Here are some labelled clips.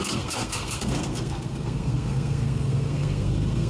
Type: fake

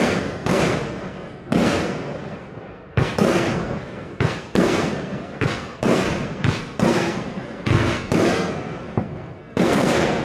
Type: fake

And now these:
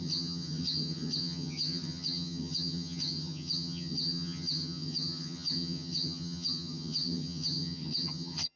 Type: fake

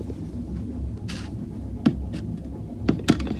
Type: real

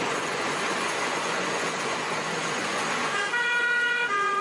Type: fake